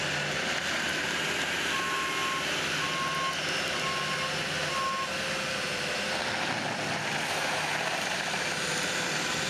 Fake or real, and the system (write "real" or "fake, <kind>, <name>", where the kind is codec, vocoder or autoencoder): real